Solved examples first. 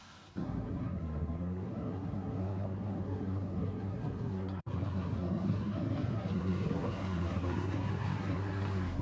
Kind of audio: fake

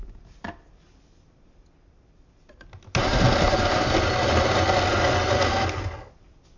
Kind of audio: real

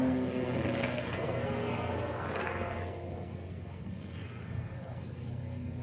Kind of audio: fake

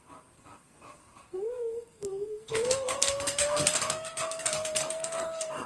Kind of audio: fake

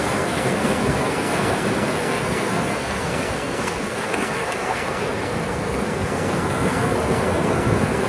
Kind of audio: fake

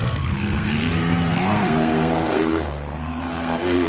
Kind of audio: fake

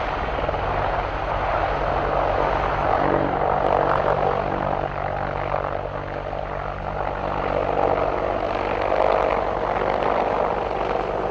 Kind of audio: real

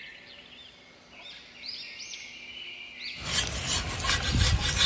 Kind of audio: real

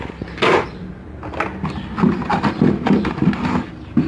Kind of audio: real